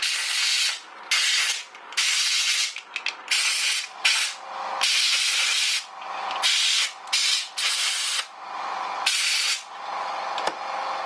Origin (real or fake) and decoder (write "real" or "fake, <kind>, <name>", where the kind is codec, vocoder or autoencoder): real